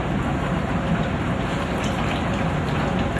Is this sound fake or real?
fake